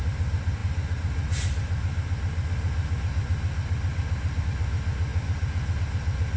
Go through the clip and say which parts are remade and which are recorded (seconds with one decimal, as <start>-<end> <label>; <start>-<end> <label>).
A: 0.0-6.4 recorded